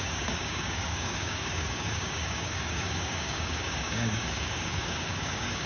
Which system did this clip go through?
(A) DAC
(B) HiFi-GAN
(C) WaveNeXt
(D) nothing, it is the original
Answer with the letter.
A